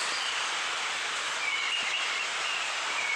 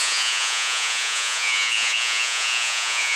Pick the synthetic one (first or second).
second